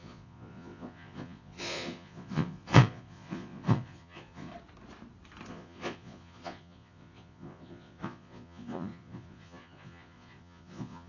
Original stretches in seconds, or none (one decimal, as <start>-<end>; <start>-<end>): 4.5-5.5